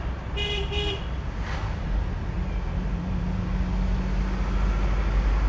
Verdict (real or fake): real